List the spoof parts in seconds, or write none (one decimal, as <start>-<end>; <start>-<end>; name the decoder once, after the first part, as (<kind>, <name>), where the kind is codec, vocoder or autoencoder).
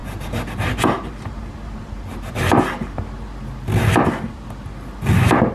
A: 0.0-2.0 (vocoder, BigVGAN v2)